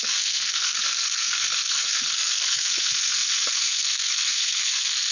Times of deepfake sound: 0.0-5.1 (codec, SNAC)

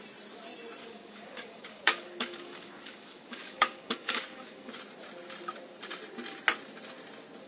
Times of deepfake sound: 0.8-4.7 (codec, DAC)